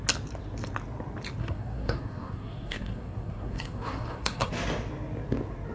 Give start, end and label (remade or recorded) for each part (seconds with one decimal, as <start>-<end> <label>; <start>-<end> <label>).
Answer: 0.0-1.4 recorded; 1.4-4.5 remade; 4.5-5.7 recorded